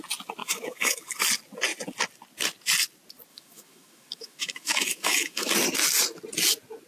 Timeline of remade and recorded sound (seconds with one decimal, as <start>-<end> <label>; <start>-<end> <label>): 0.0-0.4 recorded; 0.4-1.0 remade; 1.0-3.3 recorded; 3.3-5.5 remade; 5.5-6.9 recorded